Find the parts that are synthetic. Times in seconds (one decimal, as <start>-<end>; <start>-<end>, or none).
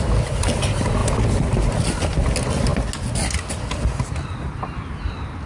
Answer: none